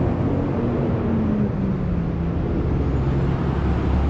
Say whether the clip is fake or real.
real